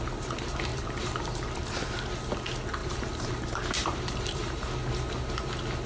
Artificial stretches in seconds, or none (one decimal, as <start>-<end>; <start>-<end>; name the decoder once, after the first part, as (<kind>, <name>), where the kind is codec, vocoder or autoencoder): 0.7-1.6 (vocoder, BigVGAN v2); 2.8-4.6